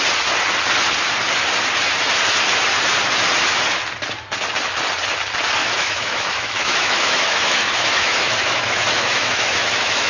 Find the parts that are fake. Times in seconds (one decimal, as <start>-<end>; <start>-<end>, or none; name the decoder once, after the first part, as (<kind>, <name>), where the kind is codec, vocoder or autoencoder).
5.6-10.1 (autoencoder, DAC-VAE)